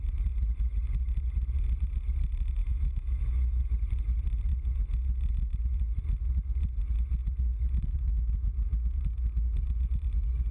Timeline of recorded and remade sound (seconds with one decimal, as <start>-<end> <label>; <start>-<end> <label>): 0.0-2.6 recorded; 2.6-3.7 remade; 3.7-10.5 recorded